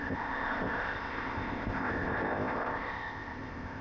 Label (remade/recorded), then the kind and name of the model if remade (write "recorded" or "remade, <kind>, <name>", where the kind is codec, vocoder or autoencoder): remade, codec, ZipCodec